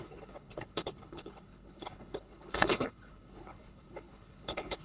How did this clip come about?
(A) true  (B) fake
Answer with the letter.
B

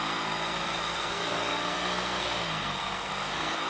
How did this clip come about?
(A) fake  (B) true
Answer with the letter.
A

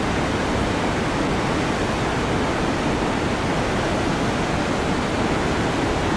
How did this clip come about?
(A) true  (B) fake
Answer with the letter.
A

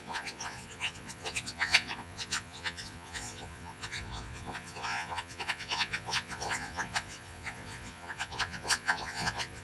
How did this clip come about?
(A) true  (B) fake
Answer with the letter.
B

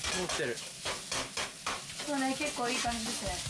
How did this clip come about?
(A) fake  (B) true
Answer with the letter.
B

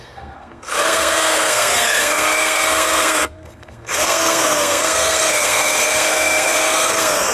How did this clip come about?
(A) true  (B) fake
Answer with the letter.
B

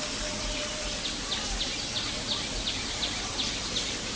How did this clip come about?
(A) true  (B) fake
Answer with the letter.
A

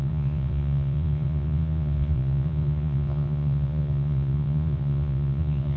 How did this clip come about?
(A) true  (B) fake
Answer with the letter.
B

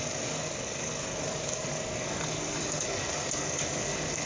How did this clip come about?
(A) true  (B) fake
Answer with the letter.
B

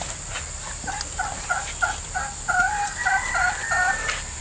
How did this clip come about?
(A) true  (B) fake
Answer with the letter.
A